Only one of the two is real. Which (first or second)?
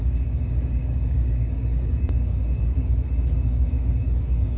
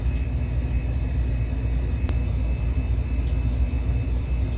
second